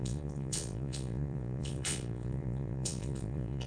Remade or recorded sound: remade